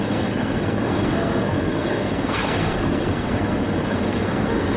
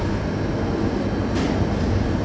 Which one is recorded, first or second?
second